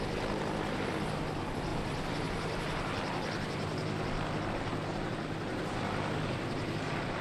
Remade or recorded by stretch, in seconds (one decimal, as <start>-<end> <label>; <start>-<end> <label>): 0.0-7.2 recorded